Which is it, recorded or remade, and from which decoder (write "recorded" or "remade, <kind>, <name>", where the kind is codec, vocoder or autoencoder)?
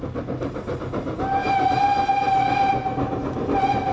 recorded